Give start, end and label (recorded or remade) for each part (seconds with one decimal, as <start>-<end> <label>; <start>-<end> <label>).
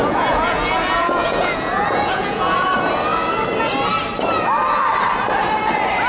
0.0-2.7 remade; 2.7-6.1 recorded